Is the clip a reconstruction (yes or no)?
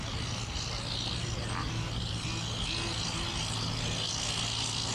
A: no